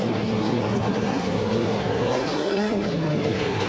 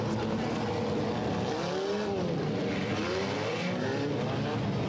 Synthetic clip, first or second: first